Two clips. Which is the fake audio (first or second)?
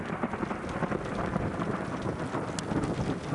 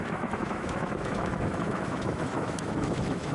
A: second